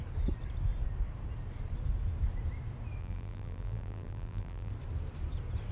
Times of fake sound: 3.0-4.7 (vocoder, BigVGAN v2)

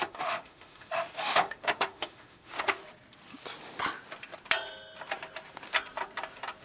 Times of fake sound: 0.0-2.8 (autoencoder, DAC-VAE)

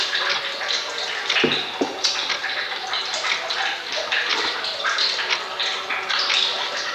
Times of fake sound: 2.4-3.0 (vocoder, BigVGAN v2); 4.3-5.6

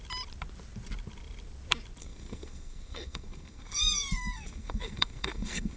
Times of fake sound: 2.0-5.8 (codec, SNAC)

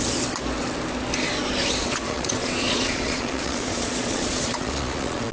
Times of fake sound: 1.8-5.3 (vocoder, Vocos)

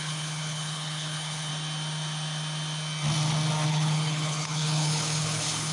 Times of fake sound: 0.0-1.5 (codec, HILCodec); 3.7-5.7